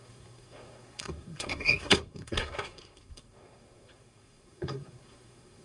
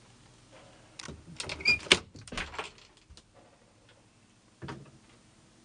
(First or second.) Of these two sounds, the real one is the second